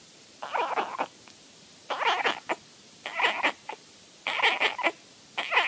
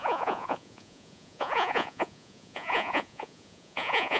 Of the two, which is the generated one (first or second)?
second